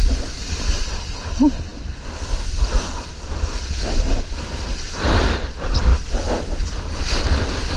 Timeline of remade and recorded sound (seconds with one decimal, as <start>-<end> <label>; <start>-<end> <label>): 0.0-7.8 recorded